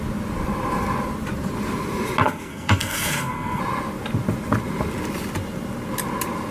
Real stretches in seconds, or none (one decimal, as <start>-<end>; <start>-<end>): 0.0-2.2; 3.6-6.5

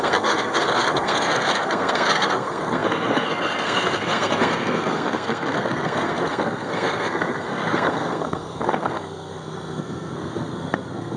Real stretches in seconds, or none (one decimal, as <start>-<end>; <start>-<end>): none

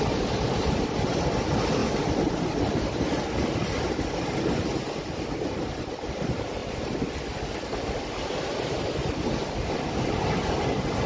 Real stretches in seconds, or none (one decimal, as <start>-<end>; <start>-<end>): 0.0-11.1

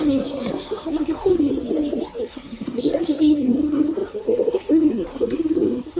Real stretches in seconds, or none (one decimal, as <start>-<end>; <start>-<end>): 1.5-2.2

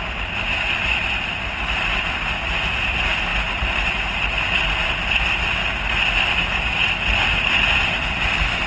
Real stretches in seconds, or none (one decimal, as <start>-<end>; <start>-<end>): 0.0-8.7

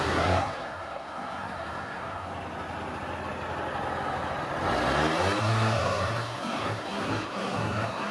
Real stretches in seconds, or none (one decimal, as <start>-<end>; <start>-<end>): 2.3-5.4

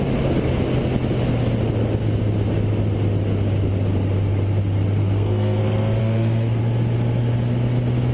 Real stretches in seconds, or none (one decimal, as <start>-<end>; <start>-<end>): 0.0-5.0; 5.6-6.0; 6.6-8.1

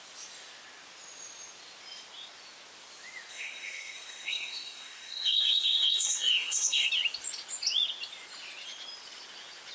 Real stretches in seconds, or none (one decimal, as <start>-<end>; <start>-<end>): 0.0-3.3; 6.9-9.7